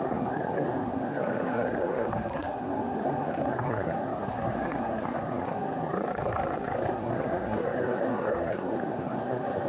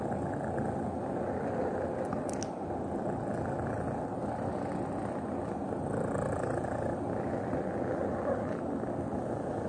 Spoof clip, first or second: first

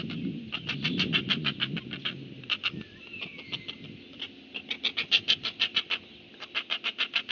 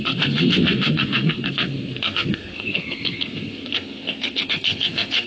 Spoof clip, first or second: second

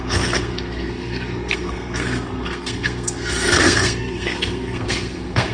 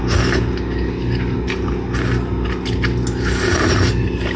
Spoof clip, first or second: first